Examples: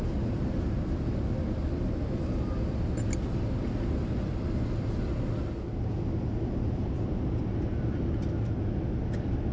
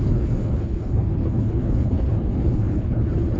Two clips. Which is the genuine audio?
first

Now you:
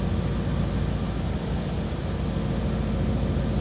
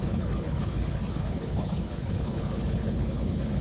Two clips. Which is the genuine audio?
first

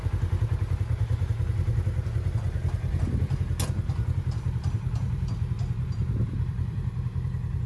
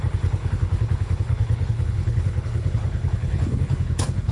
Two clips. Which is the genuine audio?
first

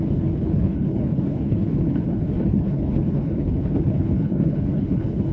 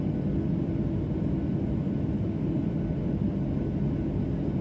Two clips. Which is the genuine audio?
second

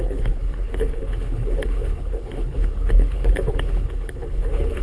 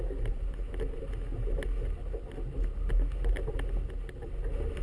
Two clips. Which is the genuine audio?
second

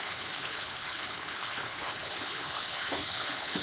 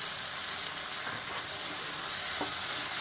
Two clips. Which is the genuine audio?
second